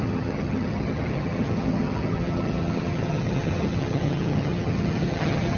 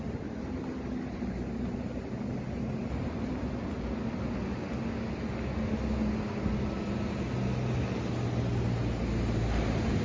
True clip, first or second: second